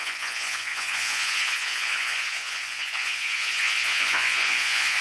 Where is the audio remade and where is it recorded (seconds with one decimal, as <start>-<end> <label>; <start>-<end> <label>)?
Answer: 0.0-5.0 remade